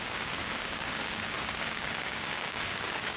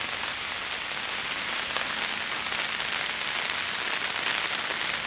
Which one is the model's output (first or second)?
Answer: first